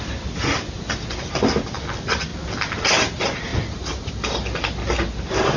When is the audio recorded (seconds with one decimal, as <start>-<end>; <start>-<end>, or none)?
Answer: 0.0-5.6